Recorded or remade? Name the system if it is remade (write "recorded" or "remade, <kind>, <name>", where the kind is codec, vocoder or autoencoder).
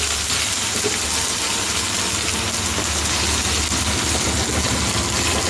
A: recorded